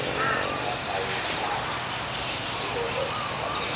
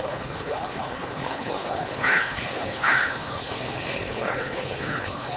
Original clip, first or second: first